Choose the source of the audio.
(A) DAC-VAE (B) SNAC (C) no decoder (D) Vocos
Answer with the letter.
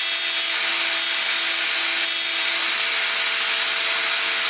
C